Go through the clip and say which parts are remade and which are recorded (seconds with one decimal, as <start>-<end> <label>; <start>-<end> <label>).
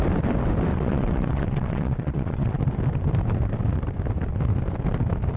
0.0-0.7 recorded; 0.7-2.6 remade; 2.6-5.4 recorded